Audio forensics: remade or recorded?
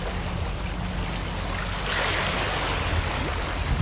recorded